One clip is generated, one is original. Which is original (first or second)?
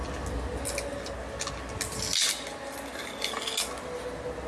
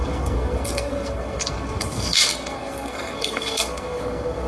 first